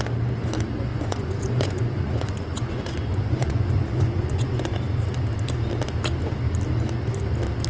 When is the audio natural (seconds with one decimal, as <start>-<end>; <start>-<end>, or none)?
0.0-0.9; 4.8-7.7